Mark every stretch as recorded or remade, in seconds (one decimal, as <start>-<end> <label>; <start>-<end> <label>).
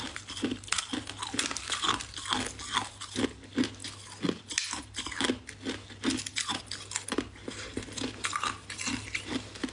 0.0-9.7 recorded